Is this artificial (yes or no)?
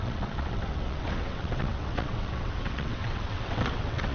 yes